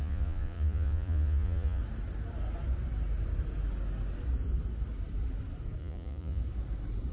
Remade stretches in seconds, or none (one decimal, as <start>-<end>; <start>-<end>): 0.0-1.8; 5.8-6.4